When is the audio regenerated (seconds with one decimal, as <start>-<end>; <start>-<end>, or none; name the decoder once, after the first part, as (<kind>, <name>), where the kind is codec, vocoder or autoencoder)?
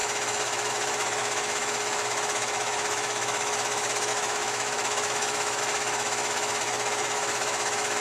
0.0-8.0 (autoencoder, DAC-VAE)